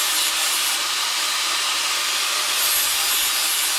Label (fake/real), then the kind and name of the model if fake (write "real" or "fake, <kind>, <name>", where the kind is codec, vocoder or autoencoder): real